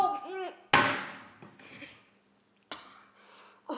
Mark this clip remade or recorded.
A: recorded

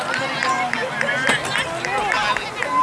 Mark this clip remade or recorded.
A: recorded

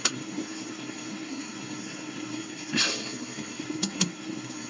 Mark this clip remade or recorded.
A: remade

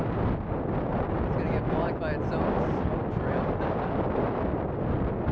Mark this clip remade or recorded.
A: recorded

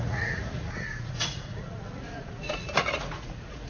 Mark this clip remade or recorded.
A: remade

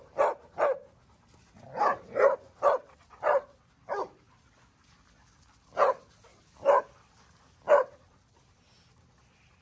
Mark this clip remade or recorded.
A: recorded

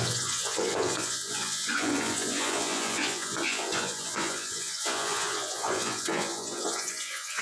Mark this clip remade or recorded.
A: remade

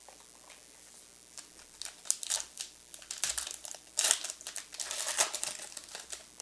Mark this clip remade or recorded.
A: recorded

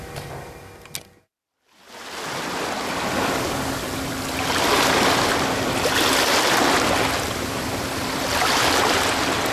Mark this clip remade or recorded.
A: recorded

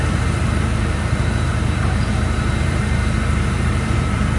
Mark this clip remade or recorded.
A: remade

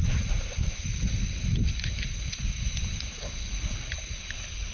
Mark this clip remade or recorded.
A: recorded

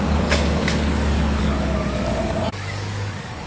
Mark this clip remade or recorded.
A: remade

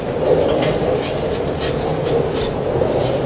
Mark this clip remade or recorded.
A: recorded